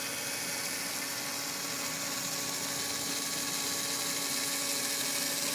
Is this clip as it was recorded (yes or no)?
yes